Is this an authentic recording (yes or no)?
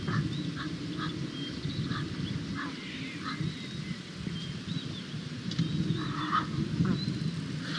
yes